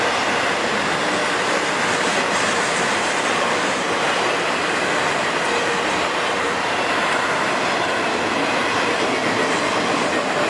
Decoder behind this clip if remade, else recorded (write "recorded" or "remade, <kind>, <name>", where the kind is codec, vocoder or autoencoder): recorded